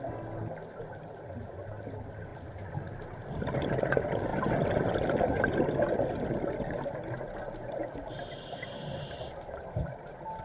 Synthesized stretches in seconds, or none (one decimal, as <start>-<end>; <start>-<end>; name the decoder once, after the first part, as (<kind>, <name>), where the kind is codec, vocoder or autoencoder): none